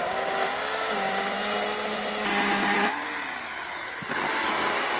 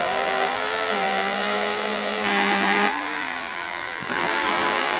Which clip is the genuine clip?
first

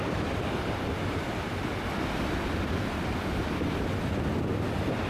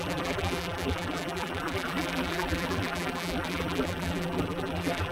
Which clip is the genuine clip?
first